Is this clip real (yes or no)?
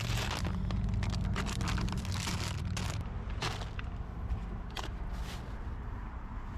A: yes